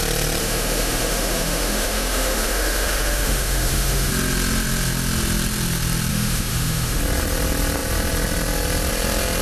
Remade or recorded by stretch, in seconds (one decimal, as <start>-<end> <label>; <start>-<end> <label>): 0.0-0.4 recorded; 0.4-4.1 remade; 4.1-6.1 recorded; 6.1-7.0 remade; 7.0-9.4 recorded